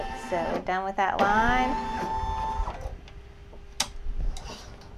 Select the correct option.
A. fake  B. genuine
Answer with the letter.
B